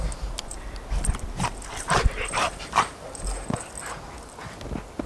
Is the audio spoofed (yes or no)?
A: no